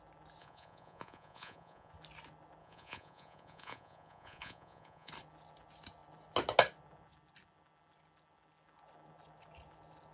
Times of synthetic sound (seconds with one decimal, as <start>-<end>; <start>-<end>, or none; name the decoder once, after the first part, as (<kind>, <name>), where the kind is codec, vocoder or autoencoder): 0.4-1.9 (vocoder, Vocos); 2.6-5.1